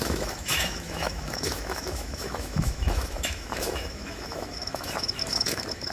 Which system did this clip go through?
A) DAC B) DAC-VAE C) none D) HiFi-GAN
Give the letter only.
B